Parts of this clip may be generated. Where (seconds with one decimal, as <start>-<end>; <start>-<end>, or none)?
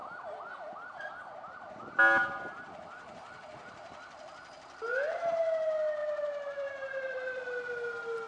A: 0.0-1.1; 6.0-7.4